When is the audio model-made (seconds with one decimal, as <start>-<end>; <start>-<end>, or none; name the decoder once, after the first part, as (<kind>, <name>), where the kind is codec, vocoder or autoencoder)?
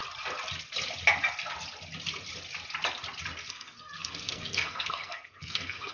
3.5-5.9 (codec, SNAC)